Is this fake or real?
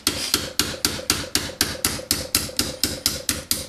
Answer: real